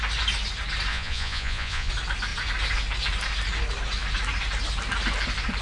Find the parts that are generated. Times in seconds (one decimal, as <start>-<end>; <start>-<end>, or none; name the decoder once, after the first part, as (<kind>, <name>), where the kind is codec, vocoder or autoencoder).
0.9-1.9 (vocoder, Vocos)